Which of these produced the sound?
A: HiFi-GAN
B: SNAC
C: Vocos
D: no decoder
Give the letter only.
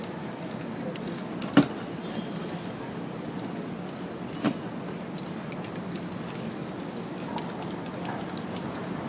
D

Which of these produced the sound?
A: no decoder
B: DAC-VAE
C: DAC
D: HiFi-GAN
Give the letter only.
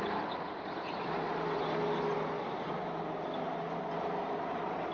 A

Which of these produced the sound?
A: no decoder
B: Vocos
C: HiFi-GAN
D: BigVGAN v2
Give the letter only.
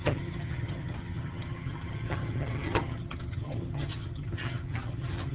C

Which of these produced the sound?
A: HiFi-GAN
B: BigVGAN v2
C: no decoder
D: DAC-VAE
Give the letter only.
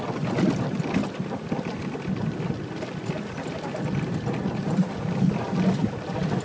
C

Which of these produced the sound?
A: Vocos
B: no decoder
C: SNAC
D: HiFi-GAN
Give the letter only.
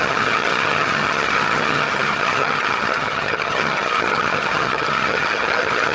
D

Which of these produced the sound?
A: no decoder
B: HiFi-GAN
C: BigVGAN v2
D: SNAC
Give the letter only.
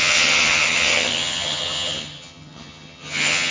B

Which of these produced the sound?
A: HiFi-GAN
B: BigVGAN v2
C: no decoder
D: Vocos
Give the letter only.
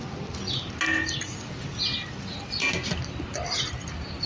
C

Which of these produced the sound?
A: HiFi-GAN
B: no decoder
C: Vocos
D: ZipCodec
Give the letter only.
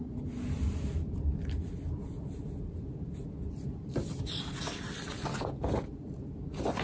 B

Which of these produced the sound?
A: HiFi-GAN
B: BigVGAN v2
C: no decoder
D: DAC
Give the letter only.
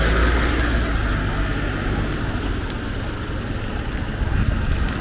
C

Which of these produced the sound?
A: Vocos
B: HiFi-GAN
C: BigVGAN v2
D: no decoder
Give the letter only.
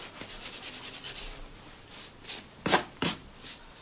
D